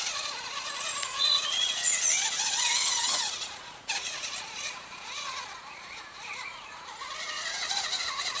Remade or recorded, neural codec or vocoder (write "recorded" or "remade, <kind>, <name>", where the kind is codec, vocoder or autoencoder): remade, vocoder, Vocos